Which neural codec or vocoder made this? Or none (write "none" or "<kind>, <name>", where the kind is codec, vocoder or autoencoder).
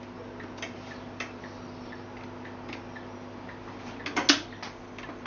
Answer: none